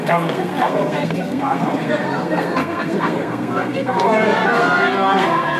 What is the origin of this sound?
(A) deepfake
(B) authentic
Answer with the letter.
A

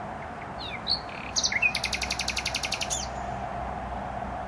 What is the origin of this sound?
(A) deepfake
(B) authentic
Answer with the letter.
B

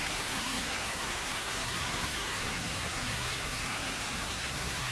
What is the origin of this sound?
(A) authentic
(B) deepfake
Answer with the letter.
B